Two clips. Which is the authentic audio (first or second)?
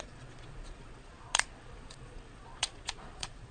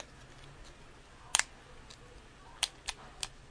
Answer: second